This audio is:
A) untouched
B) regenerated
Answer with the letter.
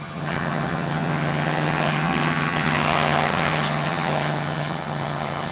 B